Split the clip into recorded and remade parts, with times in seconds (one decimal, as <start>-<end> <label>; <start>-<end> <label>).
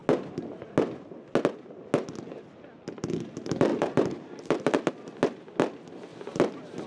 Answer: 0.0-3.7 recorded; 3.7-4.9 remade; 4.9-6.9 recorded